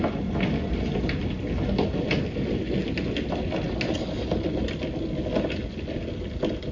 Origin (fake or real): real